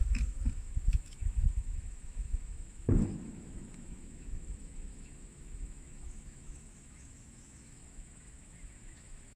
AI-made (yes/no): yes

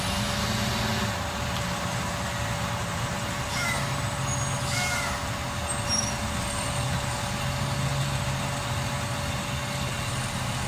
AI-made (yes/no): no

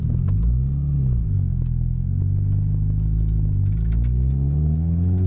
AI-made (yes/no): no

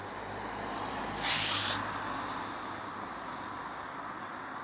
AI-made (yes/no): no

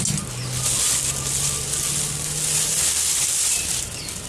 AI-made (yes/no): no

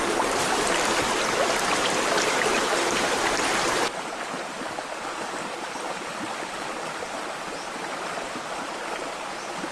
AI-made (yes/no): no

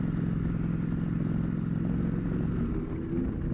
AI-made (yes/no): no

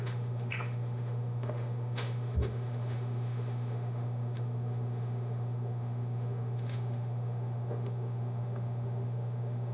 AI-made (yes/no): yes